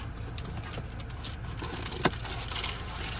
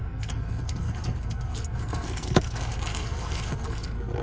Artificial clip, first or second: second